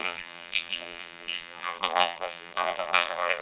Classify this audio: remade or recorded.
remade